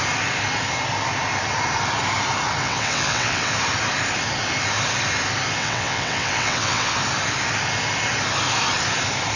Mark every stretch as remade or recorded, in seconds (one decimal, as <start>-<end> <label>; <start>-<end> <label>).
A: 0.0-2.6 recorded; 2.6-3.5 remade; 3.5-5.6 recorded; 5.6-6.9 remade; 6.9-9.4 recorded